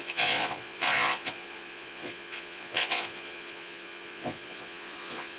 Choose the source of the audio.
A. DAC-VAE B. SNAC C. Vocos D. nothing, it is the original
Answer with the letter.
C